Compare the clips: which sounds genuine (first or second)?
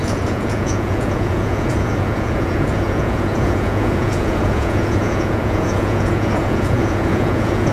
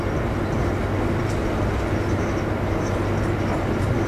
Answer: second